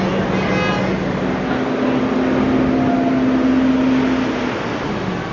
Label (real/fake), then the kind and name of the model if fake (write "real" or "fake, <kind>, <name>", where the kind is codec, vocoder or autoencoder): real